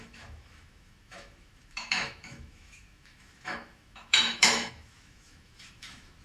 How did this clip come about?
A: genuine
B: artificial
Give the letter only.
B